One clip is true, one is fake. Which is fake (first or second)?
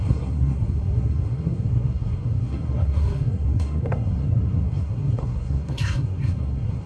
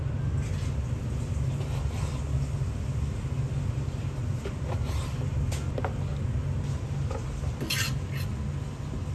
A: first